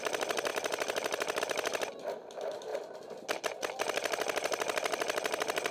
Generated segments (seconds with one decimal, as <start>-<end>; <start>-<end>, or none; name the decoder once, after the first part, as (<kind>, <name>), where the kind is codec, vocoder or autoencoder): 0.5-1.4 (vocoder, BigVGAN v2)